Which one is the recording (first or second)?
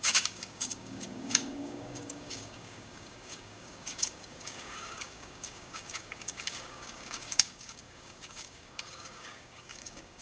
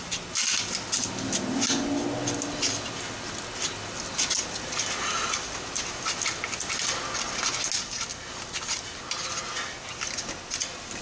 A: second